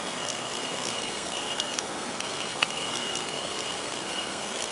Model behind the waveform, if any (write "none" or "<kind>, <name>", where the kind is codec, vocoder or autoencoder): codec, SNAC